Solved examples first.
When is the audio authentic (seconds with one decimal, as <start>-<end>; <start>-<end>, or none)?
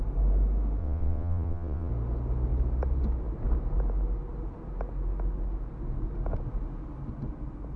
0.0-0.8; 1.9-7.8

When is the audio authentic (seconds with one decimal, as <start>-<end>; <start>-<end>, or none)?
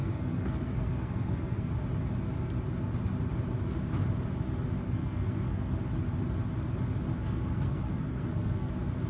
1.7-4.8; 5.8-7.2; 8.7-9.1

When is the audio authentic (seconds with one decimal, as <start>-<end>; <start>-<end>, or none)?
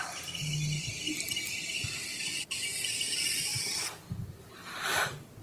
0.0-5.4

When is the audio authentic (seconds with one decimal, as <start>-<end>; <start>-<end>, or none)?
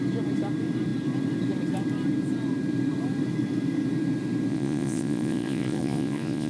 0.0-4.5